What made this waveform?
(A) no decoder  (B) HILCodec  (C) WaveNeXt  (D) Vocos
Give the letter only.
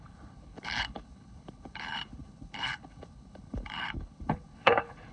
B